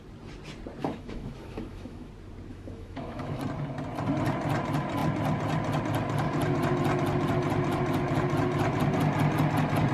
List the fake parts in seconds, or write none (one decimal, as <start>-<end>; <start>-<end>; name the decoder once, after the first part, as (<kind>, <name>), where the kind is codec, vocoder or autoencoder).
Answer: 0.8-2.1 (autoencoder, DAC-VAE); 2.5-3.4